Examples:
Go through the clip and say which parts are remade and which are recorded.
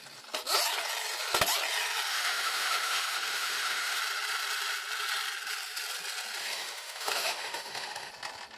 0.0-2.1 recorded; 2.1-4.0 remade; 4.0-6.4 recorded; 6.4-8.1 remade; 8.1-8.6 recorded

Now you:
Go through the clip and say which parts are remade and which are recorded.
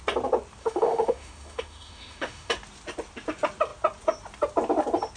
0.0-0.6 recorded; 0.6-2.5 remade; 2.5-5.2 recorded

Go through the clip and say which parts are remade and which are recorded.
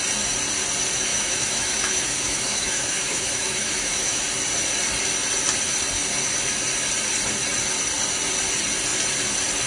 0.0-1.1 recorded; 1.1-4.2 remade; 4.2-9.7 recorded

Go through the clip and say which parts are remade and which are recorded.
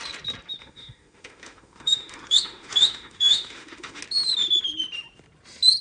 0.0-0.6 recorded; 0.6-4.0 remade; 4.0-5.8 recorded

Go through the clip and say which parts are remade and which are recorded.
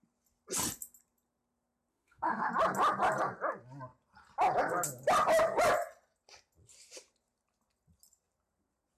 0.0-1.9 recorded; 1.9-2.5 remade; 2.5-9.0 recorded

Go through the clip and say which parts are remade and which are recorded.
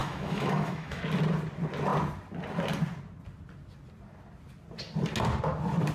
0.0-1.0 remade; 1.0-5.9 recorded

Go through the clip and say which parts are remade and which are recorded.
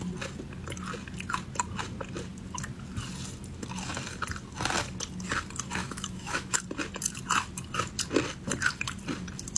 0.0-5.8 recorded; 5.8-6.6 remade; 6.6-9.6 recorded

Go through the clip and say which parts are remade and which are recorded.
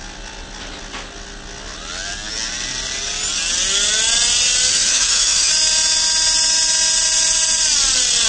0.0-4.7 recorded; 4.7-5.5 remade; 5.5-8.3 recorded